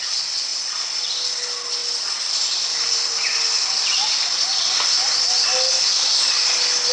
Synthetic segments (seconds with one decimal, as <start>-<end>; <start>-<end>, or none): 0.5-1.2; 1.8-2.4

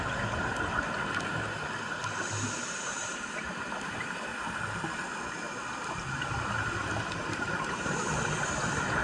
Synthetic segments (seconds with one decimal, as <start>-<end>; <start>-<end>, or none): 0.0-2.0; 2.6-4.3

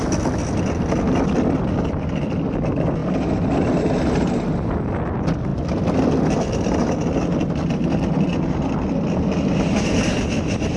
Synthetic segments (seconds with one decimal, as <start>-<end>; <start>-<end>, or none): 8.3-10.4

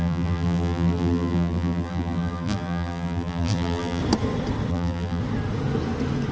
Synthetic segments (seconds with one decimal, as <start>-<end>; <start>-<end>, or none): 0.0-4.0; 4.7-5.2